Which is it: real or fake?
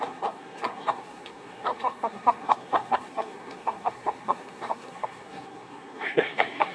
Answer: fake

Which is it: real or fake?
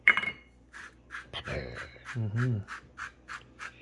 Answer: real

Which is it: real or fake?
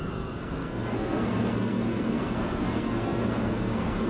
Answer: fake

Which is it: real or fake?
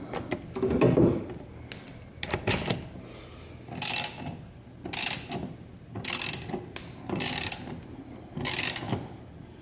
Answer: real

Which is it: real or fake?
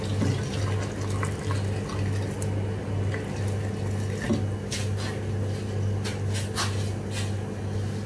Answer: real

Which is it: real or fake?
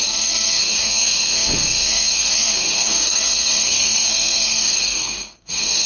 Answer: fake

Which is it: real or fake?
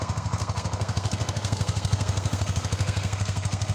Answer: fake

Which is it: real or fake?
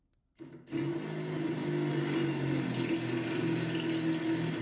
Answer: real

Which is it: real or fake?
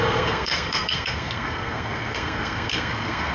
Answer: fake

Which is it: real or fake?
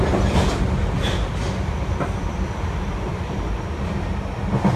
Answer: real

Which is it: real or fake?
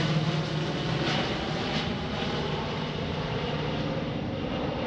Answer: real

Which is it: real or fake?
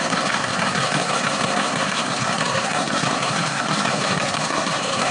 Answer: fake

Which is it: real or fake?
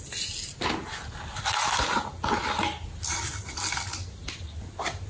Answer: real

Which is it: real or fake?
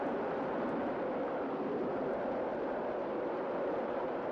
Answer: real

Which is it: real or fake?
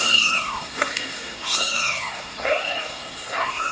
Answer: fake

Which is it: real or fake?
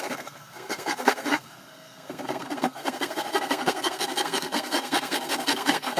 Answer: fake